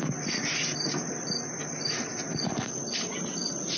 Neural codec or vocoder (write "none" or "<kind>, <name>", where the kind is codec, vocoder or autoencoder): none